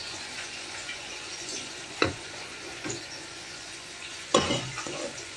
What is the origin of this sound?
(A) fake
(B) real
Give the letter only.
A